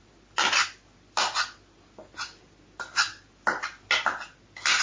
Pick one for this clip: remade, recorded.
recorded